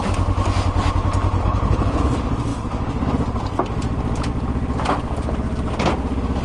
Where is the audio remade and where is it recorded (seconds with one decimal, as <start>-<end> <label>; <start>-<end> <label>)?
0.0-1.4 recorded; 1.4-2.0 remade; 2.0-6.4 recorded